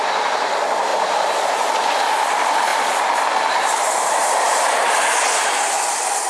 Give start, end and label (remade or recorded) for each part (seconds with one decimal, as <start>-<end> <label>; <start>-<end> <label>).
0.0-0.9 recorded; 0.9-1.9 remade; 1.9-2.7 recorded; 2.7-4.9 remade; 4.9-6.3 recorded